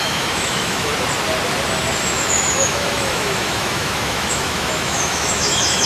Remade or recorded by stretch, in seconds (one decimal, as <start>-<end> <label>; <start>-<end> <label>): 0.0-0.9 remade; 0.9-2.0 recorded; 2.0-5.9 remade